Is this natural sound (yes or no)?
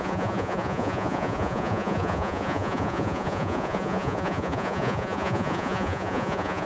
no